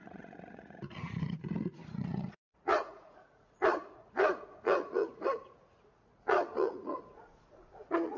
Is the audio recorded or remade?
remade